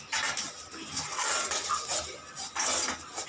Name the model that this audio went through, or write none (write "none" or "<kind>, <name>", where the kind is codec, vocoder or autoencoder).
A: none